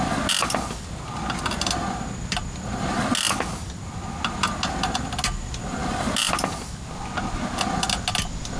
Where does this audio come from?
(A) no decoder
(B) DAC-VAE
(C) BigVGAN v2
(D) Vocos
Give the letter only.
A